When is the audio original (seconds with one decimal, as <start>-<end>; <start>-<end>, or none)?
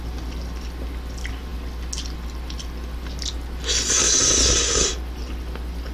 0.0-5.9